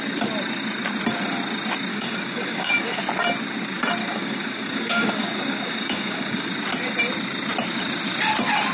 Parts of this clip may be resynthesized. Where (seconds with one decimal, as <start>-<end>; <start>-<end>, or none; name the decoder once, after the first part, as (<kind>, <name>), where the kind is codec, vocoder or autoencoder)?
1.9-3.0 (codec, DAC); 4.0-6.5